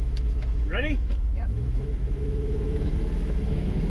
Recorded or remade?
remade